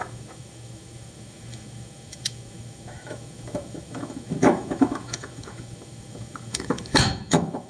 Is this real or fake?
fake